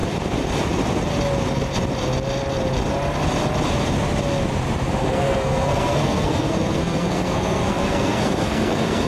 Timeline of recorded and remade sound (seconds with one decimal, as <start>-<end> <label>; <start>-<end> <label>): 0.0-5.0 recorded; 5.0-9.1 remade

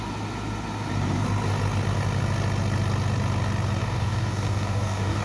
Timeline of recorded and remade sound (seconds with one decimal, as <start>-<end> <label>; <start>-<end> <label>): 0.0-3.8 recorded; 3.8-5.2 remade

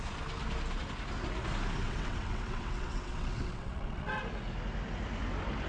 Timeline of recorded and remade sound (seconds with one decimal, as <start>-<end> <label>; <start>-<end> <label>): 0.0-1.8 recorded; 1.8-4.2 remade; 4.2-5.7 recorded